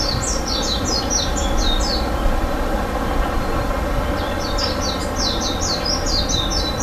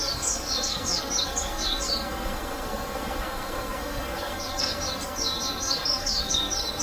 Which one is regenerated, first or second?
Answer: second